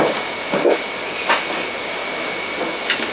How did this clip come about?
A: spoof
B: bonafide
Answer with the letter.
B